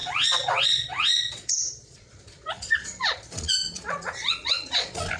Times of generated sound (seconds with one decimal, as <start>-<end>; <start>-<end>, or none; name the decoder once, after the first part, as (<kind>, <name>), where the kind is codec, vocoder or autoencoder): 0.0-5.2 (vocoder, Vocos)